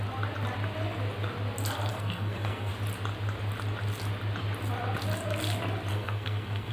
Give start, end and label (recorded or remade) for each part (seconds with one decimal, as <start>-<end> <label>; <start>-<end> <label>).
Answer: 0.0-1.9 recorded; 1.9-2.7 remade; 2.7-5.9 recorded; 5.9-6.7 remade